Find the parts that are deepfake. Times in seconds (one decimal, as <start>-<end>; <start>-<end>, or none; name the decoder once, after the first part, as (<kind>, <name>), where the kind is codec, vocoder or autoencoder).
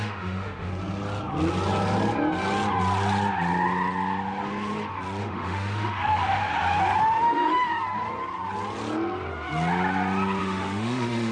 0.0-0.7 (autoencoder, DAC-VAE); 5.2-6.5; 7.0-7.7; 10.4-11.3